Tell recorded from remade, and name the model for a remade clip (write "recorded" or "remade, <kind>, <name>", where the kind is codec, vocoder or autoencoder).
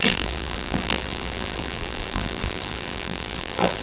remade, vocoder, BigVGAN v2